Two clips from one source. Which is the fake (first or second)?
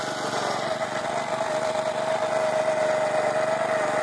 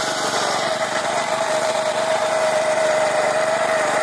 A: second